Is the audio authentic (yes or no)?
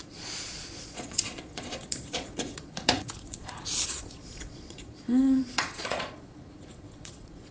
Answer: no